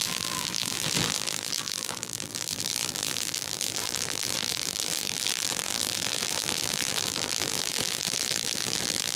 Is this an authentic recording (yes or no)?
no